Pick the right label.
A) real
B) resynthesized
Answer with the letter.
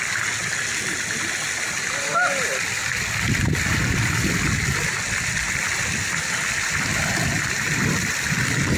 A